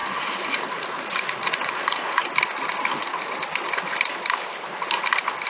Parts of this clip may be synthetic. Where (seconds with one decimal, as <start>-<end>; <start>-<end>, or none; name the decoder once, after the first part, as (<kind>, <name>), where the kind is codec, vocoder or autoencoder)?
0.0-2.2 (vocoder, Vocos)